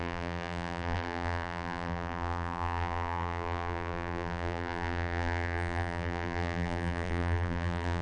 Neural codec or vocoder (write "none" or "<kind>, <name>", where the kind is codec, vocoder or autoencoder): vocoder, BigVGAN v2